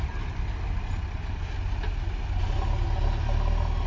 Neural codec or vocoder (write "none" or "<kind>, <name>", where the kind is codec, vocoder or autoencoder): none